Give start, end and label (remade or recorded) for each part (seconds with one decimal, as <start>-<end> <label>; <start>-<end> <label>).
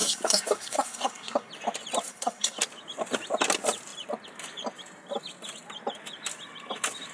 0.0-1.5 remade; 1.5-2.1 recorded; 2.1-2.6 remade; 2.6-7.1 recorded